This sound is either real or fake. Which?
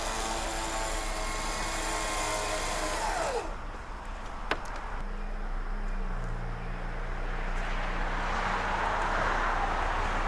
real